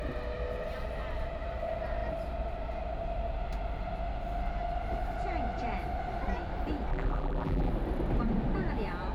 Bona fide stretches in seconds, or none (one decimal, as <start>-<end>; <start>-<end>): 0.0-6.9; 7.7-9.1